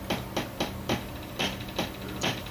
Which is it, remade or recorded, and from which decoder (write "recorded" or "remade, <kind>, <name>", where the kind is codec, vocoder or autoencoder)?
recorded